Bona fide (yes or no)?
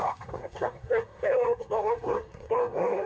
no